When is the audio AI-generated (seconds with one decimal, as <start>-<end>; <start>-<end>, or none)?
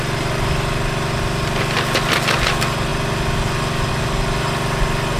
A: none